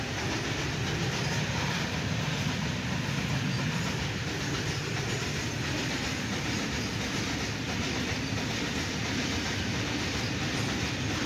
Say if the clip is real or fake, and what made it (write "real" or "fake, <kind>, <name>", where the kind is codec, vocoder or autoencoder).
real